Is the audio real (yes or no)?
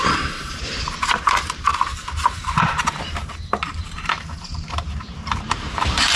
no